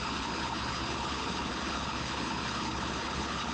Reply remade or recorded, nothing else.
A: remade